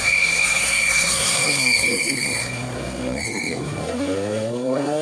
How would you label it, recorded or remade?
remade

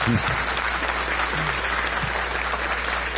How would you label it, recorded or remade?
recorded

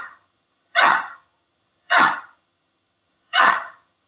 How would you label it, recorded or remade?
remade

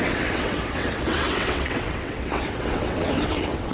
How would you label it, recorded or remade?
remade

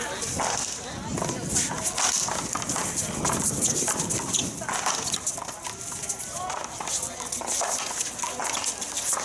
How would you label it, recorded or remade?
recorded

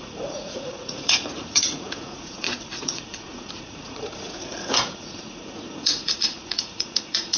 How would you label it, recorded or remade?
remade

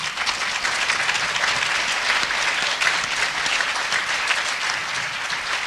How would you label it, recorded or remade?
recorded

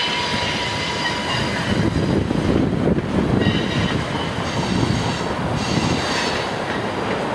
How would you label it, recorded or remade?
recorded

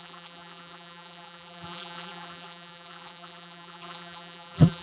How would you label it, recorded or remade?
remade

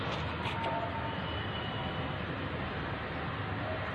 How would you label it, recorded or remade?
recorded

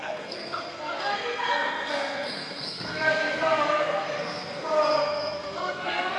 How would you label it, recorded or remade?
remade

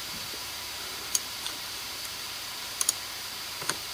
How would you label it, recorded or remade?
remade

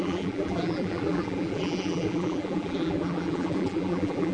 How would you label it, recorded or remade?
remade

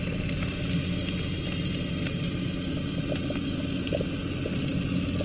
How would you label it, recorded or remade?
recorded